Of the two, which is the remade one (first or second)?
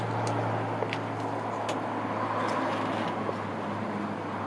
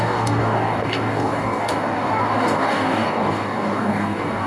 second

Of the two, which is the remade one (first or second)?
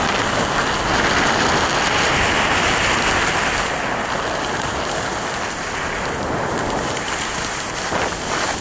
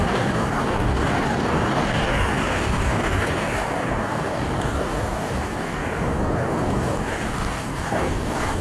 second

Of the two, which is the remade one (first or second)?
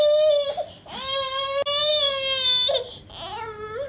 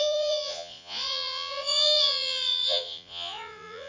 second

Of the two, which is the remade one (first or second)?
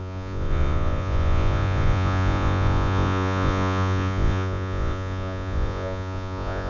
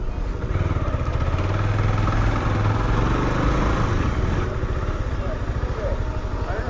first